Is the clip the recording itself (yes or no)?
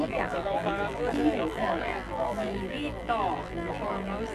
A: no